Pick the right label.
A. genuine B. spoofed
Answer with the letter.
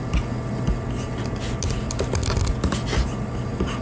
A